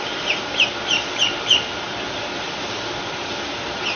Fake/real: fake